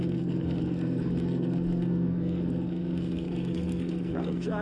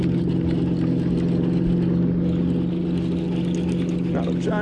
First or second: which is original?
second